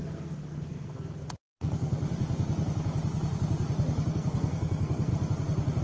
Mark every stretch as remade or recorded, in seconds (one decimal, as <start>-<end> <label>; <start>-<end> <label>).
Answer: 0.0-1.9 remade; 1.9-4.1 recorded; 4.1-5.1 remade; 5.1-5.8 recorded